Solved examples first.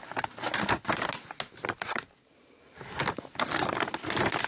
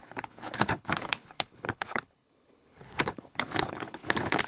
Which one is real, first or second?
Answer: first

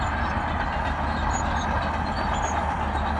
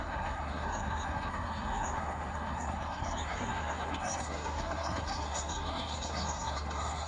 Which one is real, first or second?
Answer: first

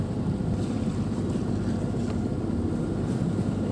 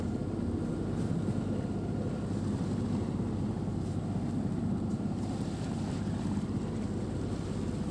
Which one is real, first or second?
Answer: second